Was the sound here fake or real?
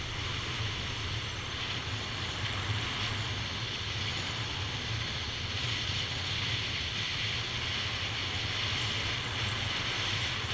real